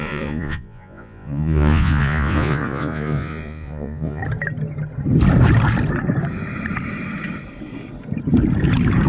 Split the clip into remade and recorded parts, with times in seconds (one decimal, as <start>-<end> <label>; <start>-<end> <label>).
0.0-4.2 remade; 4.2-9.1 recorded